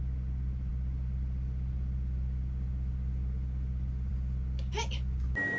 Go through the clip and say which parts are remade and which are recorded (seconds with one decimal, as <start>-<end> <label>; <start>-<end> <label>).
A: 0.0-5.6 recorded